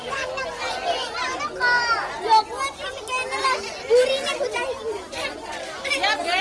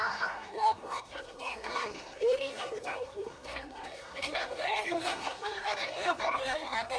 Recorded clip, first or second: first